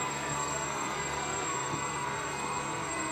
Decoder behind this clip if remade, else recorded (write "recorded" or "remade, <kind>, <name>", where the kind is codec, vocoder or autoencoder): remade, codec, SNAC